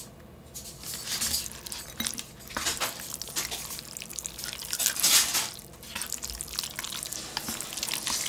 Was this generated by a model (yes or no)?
no